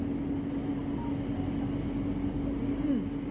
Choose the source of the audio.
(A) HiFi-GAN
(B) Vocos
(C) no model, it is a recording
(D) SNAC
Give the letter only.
C